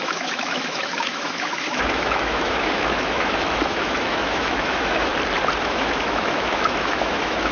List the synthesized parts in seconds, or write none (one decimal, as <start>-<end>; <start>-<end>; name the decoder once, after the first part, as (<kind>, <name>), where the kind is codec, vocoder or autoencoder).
0.0-5.1 (autoencoder, DAC-VAE); 5.6-7.5